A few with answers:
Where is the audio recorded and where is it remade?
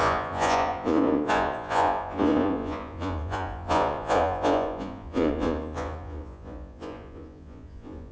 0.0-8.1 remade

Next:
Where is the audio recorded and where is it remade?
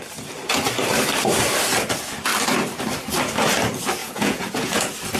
0.0-4.0 recorded; 4.0-4.8 remade; 4.8-5.2 recorded